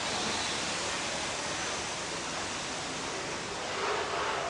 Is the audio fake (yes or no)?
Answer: no